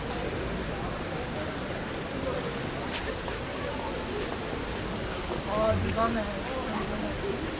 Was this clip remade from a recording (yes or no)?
no